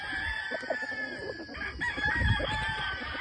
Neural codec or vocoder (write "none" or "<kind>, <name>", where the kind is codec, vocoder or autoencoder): none